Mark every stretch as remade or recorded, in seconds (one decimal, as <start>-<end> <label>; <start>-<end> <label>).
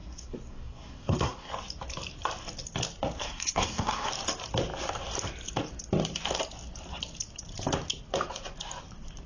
0.0-1.5 remade; 1.5-3.2 recorded; 3.2-4.1 remade; 4.1-9.3 recorded